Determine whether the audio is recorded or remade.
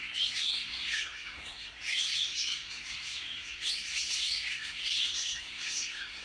remade